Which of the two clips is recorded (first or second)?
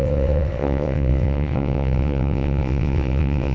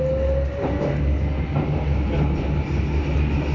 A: second